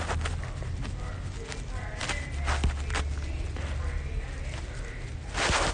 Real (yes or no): yes